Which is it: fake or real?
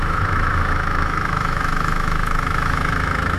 fake